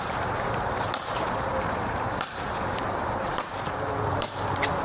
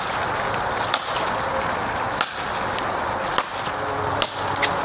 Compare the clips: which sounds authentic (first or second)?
second